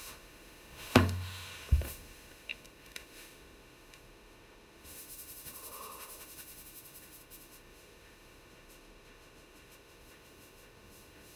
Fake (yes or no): yes